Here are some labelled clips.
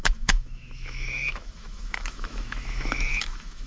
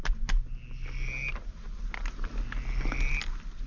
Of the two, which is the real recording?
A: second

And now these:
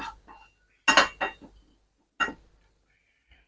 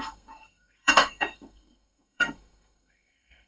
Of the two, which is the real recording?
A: first